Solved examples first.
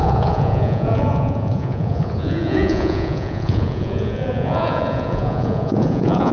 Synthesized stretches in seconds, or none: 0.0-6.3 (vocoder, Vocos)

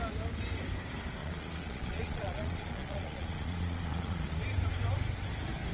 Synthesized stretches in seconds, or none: 1.2-4.4 (vocoder, Vocos)

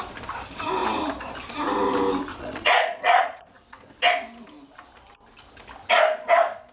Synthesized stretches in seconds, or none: 2.3-3.5 (vocoder, Vocos)

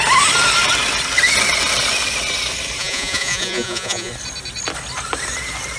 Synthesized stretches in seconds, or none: 2.8-4.1 (vocoder, Vocos)

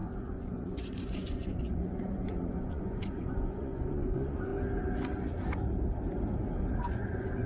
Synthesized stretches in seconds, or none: 0.0-4.5 (vocoder, Vocos); 6.8-7.5

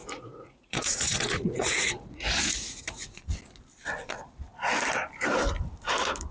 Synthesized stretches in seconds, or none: 0.0-3.2 (vocoder, Vocos)